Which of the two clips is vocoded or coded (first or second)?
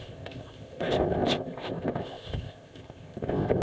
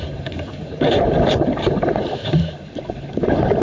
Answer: first